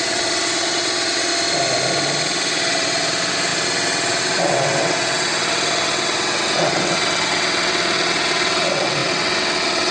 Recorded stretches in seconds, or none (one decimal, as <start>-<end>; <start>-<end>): 1.3-2.2